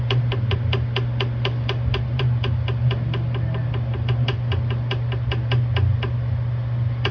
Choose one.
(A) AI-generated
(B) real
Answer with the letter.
B